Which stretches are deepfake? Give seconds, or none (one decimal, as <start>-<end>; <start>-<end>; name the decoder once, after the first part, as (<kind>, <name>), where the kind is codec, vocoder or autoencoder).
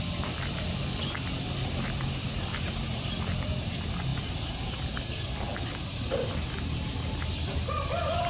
none